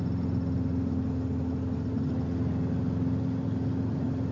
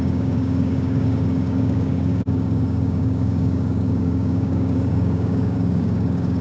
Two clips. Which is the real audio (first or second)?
first